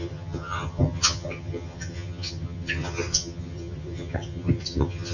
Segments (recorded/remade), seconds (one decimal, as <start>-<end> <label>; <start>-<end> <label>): 0.0-5.1 remade